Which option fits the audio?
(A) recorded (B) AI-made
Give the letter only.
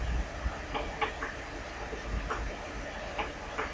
A